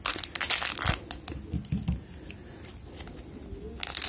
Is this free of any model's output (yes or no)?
yes